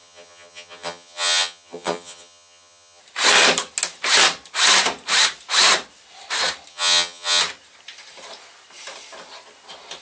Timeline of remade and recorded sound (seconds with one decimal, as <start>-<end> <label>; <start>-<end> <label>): 0.0-3.0 remade; 3.0-6.7 recorded; 6.7-7.4 remade; 7.4-10.0 recorded